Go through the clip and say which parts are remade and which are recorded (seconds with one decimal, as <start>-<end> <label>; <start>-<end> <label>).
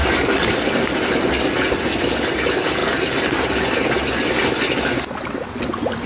0.0-6.1 recorded